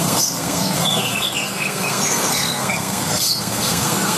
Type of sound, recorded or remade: remade